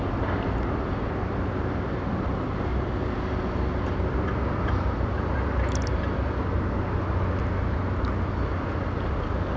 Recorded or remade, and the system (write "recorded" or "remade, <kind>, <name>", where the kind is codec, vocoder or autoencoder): recorded